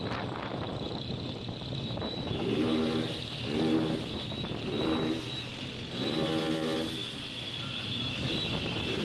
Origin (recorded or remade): recorded